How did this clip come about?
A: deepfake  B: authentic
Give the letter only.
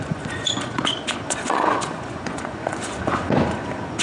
A